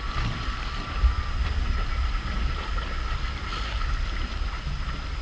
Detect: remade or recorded recorded